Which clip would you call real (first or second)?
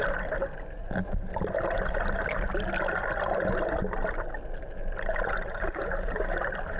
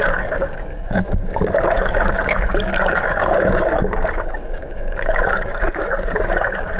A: first